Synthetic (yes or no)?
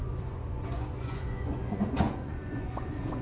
yes